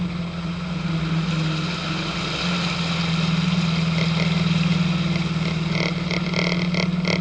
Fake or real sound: real